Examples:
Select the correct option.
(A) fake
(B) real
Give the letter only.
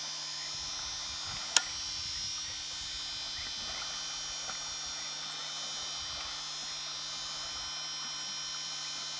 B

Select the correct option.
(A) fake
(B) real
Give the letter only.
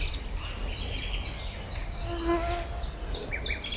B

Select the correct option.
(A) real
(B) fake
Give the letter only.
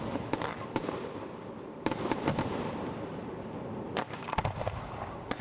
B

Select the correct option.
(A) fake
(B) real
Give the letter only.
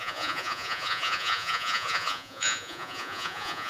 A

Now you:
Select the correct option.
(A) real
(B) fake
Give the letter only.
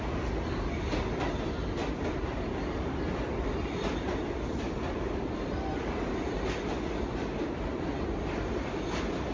A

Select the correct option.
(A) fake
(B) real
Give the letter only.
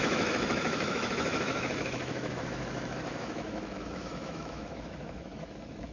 A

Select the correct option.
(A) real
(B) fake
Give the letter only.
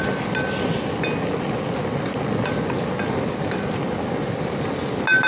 A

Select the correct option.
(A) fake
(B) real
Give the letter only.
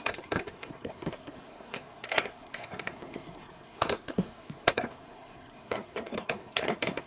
A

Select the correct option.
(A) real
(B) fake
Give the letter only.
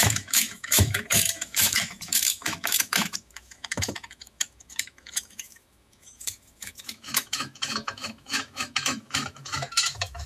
B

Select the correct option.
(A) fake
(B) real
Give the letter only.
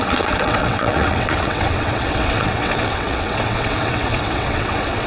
A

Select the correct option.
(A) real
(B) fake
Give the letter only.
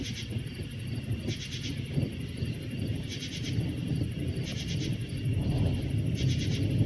A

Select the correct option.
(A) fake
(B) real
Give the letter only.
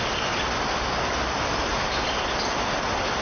B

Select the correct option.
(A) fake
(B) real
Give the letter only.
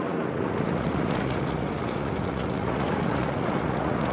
A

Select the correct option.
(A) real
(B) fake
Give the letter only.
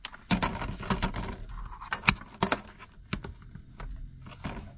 A